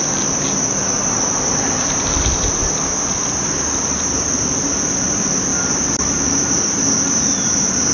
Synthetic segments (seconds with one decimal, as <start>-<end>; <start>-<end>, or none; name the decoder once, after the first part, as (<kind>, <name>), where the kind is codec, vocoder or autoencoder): none